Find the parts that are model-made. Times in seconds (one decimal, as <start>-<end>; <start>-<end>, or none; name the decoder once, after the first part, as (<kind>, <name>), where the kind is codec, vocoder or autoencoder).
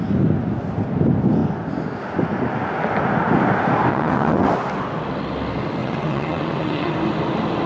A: 3.9-4.5 (vocoder, WaveNeXt); 5.8-6.9